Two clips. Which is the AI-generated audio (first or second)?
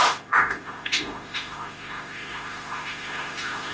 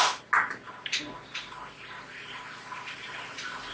first